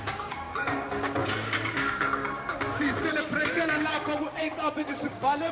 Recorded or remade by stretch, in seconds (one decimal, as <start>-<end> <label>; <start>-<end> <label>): 0.0-5.5 remade